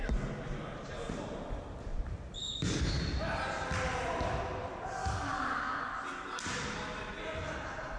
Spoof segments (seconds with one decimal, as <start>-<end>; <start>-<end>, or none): 2.4-3.0; 5.0-6.0